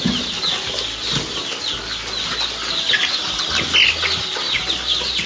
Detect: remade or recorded recorded